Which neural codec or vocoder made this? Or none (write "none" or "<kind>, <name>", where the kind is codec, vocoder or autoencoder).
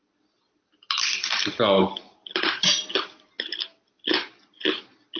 none